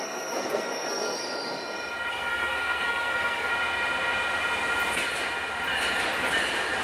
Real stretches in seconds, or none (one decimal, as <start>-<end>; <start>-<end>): 1.2-2.1; 3.5-6.8